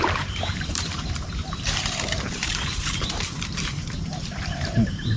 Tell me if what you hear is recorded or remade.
remade